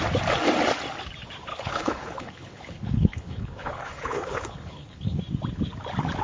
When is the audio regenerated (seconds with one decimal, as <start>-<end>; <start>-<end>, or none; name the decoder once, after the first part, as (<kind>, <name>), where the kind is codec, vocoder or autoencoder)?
1.5-5.2 (codec, HILCodec)